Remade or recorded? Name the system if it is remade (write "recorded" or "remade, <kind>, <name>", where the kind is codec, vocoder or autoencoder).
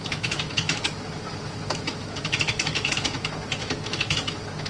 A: remade, autoencoder, DAC-VAE